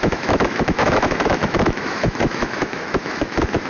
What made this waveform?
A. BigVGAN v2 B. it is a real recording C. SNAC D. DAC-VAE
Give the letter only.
D